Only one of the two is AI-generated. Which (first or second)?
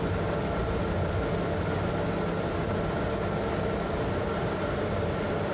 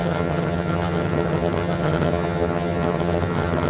second